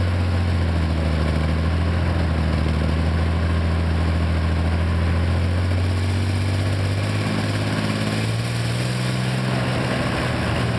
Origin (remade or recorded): recorded